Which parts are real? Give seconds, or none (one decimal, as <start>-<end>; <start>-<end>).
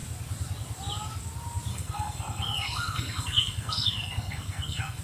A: 0.0-1.7